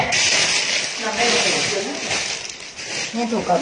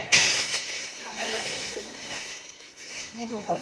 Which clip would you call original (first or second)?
first